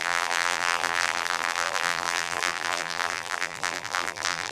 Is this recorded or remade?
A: remade